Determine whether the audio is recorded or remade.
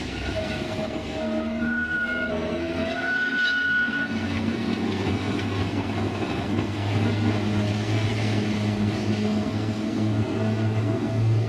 remade